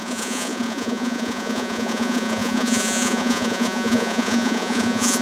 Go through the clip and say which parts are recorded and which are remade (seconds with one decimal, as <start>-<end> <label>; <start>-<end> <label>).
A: 0.0-5.2 remade